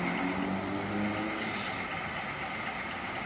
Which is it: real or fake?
real